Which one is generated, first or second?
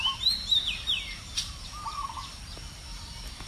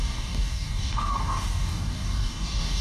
second